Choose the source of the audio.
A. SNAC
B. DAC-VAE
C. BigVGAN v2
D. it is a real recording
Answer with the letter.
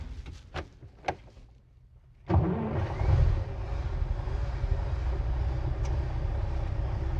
D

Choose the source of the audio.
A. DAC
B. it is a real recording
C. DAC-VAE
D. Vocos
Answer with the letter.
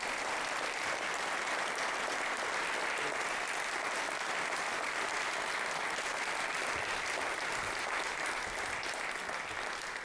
B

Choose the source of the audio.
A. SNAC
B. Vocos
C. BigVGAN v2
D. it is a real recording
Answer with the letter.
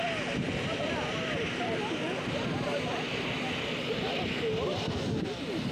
D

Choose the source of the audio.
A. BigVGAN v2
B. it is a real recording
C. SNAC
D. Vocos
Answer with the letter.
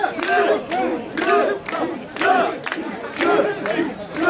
A